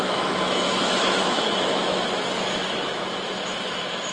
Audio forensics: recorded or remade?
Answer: remade